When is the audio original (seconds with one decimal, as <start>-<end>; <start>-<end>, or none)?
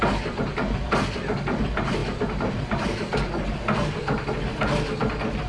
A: 0.0-5.5